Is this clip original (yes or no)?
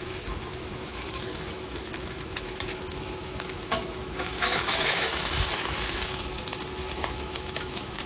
no